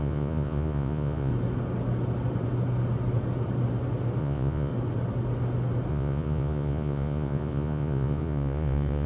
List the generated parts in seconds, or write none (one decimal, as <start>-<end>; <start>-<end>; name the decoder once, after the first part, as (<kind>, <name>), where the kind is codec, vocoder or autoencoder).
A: 0.0-1.3 (vocoder, Vocos); 4.2-4.7; 5.9-9.1